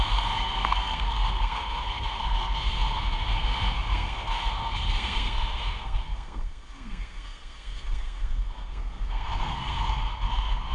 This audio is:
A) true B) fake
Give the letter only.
B